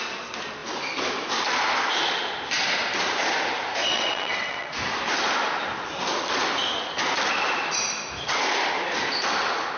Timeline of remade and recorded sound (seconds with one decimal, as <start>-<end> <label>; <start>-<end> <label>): 0.0-3.8 recorded; 3.8-4.7 remade; 4.7-9.8 recorded